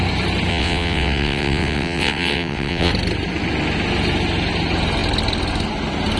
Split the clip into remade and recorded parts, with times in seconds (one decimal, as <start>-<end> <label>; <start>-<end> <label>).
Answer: 0.0-0.5 recorded; 0.5-2.9 remade; 2.9-6.2 recorded